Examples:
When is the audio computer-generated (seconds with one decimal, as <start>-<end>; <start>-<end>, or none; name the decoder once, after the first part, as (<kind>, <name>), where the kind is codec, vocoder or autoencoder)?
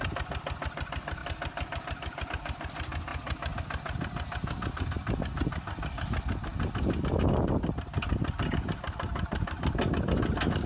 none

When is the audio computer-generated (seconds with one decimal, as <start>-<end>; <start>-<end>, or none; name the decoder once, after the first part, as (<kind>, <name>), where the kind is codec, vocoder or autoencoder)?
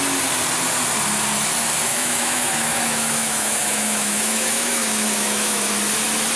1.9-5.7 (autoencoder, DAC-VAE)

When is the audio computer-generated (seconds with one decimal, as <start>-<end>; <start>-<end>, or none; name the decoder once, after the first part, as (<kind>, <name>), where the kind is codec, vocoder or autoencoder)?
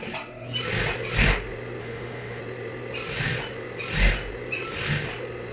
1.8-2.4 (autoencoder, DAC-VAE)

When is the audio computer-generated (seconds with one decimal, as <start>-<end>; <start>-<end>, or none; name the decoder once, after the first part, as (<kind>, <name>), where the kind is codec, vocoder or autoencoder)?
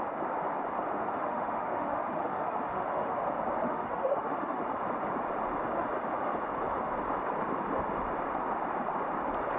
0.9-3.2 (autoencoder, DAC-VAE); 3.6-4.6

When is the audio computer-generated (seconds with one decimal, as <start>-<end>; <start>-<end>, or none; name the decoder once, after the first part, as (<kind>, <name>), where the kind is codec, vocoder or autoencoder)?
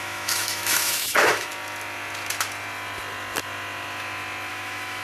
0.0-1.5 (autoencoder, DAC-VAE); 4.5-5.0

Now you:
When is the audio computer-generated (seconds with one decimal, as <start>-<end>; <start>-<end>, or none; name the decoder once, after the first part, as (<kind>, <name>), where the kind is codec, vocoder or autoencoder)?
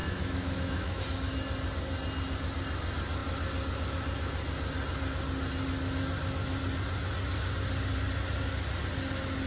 0.0-1.0 (autoencoder, DAC-VAE)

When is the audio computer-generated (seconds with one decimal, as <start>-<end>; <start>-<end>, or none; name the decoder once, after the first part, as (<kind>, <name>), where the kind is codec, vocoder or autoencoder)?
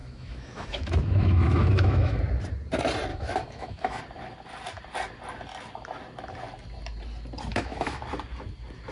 0.0-2.2 (autoencoder, DAC-VAE); 3.1-4.0; 7.5-8.0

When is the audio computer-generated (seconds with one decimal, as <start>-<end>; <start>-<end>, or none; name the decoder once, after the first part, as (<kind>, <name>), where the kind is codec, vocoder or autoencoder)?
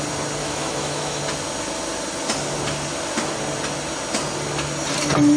0.4-1.2 (autoencoder, DAC-VAE)